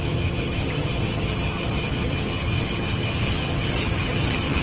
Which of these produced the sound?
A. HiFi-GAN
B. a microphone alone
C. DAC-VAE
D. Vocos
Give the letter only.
A